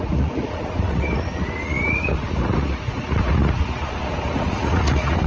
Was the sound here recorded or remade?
remade